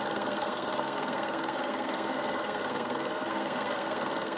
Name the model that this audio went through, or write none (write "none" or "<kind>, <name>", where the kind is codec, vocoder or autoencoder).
codec, SNAC